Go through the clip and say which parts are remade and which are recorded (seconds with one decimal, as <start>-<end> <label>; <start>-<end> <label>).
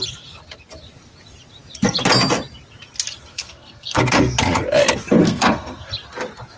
0.0-3.3 recorded; 3.3-4.0 remade; 4.0-5.2 recorded; 5.2-5.9 remade; 5.9-6.6 recorded